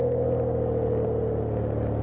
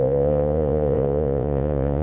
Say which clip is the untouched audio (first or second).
first